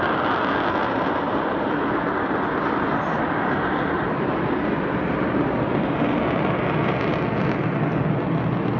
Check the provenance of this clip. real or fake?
real